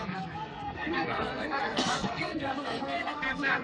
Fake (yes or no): yes